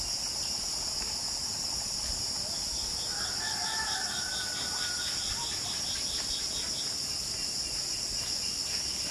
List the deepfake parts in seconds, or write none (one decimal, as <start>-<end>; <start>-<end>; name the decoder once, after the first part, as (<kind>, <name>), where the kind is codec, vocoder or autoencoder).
none